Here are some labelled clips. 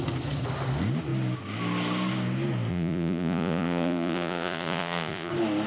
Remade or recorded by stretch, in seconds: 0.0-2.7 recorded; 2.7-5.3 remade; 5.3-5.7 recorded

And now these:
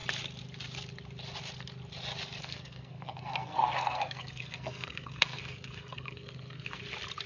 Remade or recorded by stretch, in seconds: 0.0-2.4 recorded; 2.4-6.8 remade; 6.8-7.3 recorded